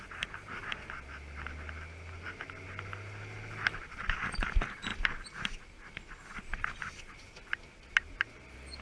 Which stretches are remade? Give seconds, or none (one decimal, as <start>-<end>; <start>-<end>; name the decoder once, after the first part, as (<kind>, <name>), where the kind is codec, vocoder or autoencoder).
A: none